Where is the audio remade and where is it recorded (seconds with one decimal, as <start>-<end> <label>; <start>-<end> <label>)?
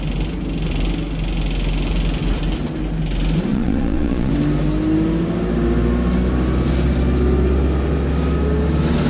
0.0-3.5 recorded; 3.5-4.3 remade; 4.3-9.1 recorded